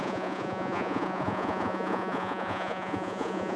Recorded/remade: remade